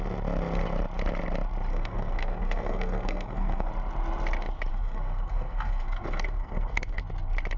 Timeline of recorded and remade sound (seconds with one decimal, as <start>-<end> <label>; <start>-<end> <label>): 0.0-1.7 recorded; 1.7-3.7 remade; 3.7-4.7 recorded; 4.7-7.0 remade; 7.0-7.6 recorded